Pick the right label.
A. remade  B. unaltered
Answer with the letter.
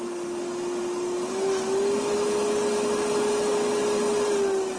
B